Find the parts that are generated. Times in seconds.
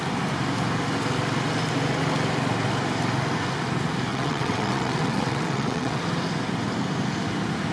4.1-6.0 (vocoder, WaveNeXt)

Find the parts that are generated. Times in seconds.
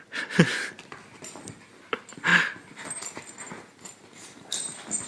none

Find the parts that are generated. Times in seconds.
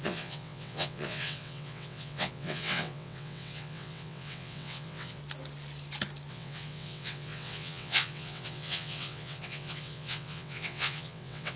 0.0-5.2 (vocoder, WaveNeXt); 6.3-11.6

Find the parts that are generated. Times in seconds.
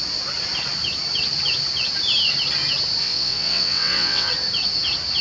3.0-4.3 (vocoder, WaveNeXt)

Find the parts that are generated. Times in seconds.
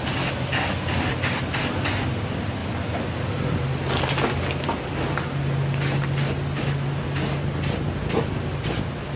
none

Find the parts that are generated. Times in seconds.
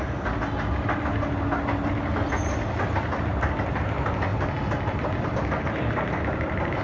none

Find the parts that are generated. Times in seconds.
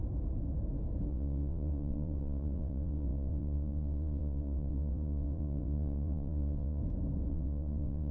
1.1-6.8 (vocoder, WaveNeXt); 7.3-8.1